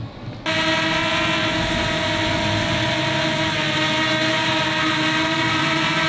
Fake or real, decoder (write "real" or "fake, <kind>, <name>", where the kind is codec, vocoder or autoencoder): real